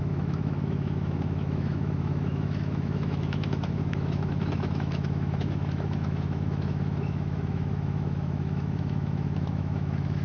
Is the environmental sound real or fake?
fake